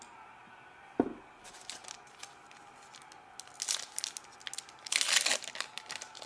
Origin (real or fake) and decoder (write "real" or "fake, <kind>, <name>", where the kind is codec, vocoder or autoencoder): real